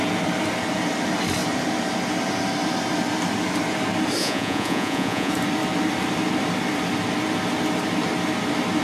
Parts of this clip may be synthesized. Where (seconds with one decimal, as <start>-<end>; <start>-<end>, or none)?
4.2-5.3